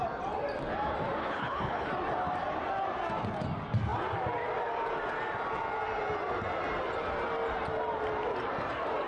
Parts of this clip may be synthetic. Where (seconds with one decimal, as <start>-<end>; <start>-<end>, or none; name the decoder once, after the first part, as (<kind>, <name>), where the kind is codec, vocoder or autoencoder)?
1.2-1.9 (codec, HILCodec)